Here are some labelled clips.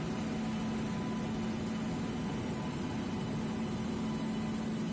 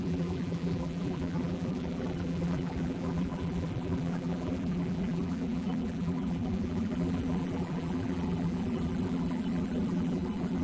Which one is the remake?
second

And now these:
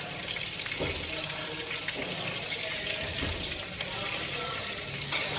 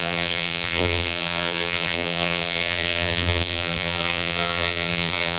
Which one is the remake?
second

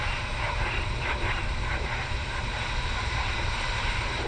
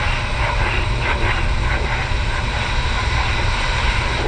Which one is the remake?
first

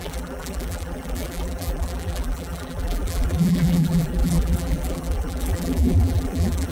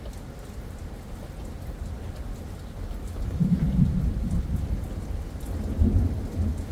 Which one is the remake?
first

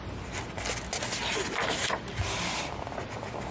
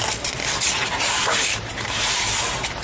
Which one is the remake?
second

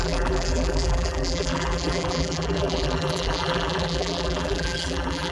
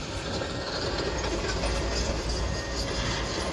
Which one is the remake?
first